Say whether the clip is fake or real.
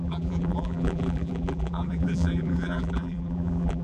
fake